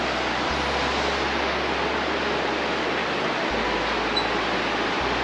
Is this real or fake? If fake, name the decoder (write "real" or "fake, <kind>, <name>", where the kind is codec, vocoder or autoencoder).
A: real